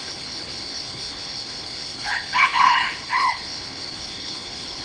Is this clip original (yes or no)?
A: no